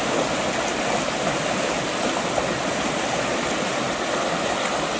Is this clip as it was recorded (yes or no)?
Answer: yes